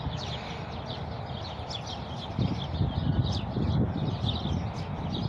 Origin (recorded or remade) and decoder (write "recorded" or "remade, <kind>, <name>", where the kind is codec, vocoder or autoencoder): recorded